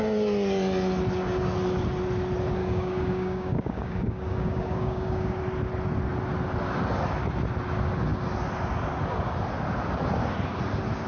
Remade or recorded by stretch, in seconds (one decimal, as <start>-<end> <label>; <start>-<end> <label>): 0.0-2.6 recorded; 2.6-5.4 remade; 5.4-11.1 recorded